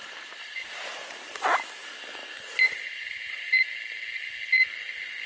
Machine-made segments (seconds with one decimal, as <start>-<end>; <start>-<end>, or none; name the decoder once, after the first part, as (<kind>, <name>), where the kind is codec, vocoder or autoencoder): 0.0-0.6 (vocoder, BigVGAN v2); 2.2-3.4